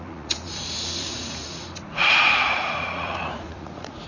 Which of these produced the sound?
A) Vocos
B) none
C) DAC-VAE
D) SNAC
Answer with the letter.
A